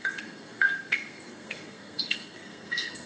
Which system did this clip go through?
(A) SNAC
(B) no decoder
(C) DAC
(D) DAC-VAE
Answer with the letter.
A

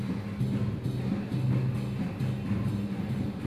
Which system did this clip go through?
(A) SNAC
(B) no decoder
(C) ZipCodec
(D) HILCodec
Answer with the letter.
B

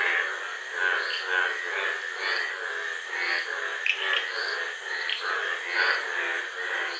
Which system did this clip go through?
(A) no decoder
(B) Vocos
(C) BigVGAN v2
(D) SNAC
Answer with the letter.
A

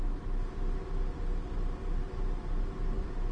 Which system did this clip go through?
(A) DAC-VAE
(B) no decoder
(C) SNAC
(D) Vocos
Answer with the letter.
B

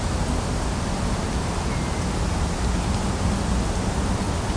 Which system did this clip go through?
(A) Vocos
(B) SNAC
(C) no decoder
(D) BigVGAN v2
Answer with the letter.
C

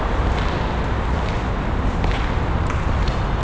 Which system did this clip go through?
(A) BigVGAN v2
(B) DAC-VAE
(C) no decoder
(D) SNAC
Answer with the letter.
C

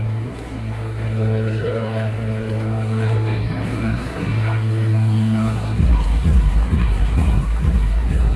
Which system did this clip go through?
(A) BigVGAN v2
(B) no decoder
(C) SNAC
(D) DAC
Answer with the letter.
C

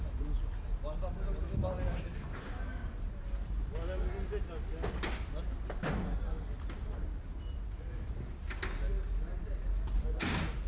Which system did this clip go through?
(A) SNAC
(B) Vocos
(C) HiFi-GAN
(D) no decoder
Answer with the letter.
D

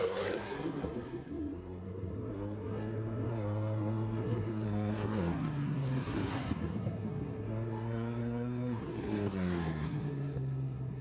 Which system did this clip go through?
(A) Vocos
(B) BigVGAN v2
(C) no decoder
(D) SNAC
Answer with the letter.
D